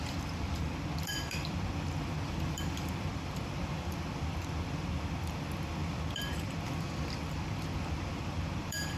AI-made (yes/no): yes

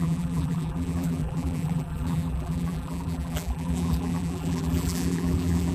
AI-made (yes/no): yes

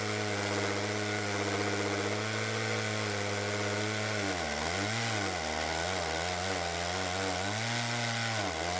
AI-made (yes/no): no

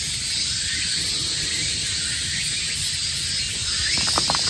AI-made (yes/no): no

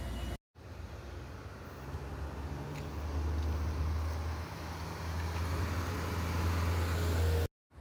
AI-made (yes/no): no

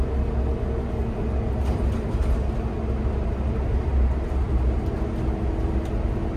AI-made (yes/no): no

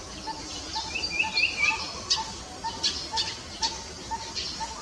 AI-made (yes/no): no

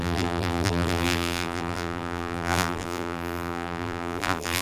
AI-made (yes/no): yes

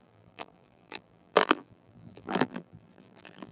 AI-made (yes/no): yes